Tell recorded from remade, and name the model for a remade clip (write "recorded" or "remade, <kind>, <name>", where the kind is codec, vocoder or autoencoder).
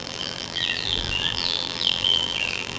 remade, vocoder, BigVGAN v2